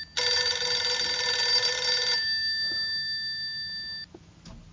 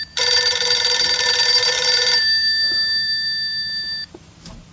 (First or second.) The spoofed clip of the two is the second